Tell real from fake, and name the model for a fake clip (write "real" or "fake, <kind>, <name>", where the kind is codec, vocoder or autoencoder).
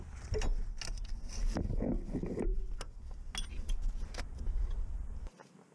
real